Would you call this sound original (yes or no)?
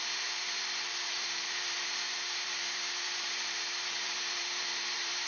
no